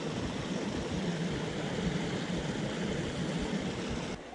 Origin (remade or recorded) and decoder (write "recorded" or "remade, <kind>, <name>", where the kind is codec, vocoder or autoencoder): recorded